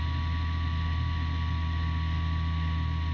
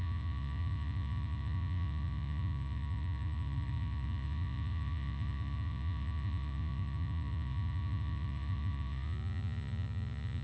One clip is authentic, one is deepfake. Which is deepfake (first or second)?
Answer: second